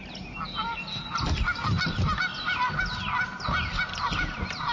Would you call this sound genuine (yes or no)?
yes